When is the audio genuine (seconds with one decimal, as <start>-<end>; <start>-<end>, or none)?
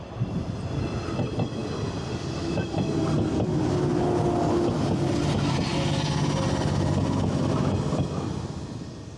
0.0-9.2